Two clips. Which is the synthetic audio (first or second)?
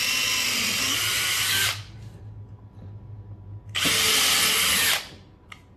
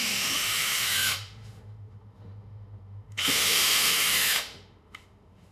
second